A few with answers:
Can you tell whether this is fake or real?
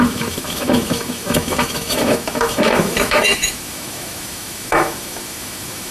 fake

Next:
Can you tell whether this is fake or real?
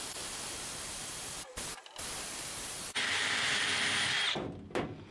real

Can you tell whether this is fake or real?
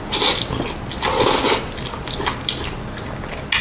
real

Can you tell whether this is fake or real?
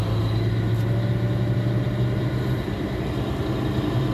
real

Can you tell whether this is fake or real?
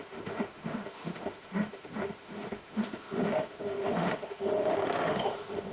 fake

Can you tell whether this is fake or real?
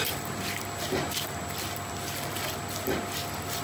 real